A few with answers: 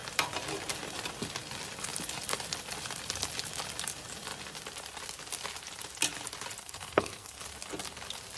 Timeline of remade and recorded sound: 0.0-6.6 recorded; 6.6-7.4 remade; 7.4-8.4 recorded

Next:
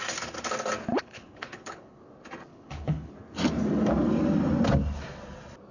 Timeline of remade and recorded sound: 0.0-0.9 recorded; 0.9-2.0 remade; 2.0-2.5 recorded; 2.5-3.1 remade; 3.1-5.7 recorded

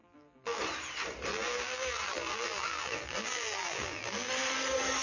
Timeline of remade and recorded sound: 0.0-0.6 remade; 0.6-1.3 recorded; 1.3-4.3 remade; 4.3-5.0 recorded

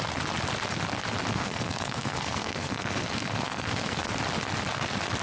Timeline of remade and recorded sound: 0.0-1.3 recorded; 1.3-4.1 remade; 4.1-5.2 recorded

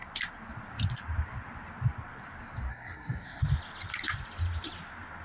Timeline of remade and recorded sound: 0.0-2.7 recorded; 2.7-3.4 remade; 3.4-5.2 recorded

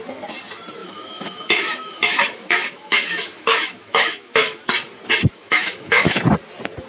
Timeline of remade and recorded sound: 0.0-0.8 recorded; 0.8-4.7 remade; 4.7-5.4 recorded; 5.4-6.2 remade; 6.2-6.9 recorded

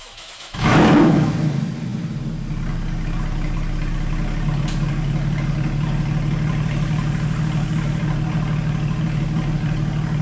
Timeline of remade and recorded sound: 0.0-1.3 remade; 1.3-10.2 recorded